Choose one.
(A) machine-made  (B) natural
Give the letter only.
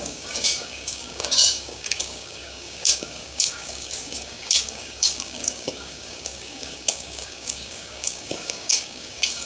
A